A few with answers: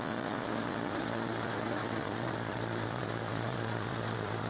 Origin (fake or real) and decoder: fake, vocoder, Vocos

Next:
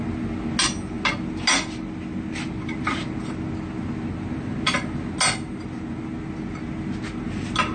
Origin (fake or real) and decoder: real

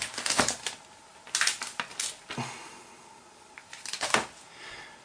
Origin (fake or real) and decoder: real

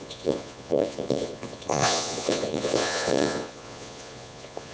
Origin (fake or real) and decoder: fake, vocoder, Vocos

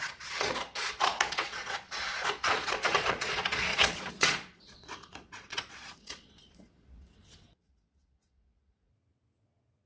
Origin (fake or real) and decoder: fake, vocoder, Vocos